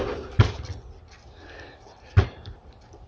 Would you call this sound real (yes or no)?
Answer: yes